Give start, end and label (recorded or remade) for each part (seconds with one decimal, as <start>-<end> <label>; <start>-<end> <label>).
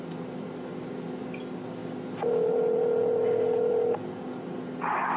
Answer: 0.0-5.2 recorded